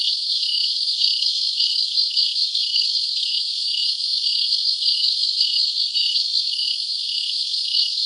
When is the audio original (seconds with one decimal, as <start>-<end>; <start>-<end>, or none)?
none